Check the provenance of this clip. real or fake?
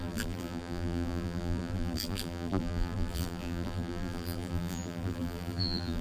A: fake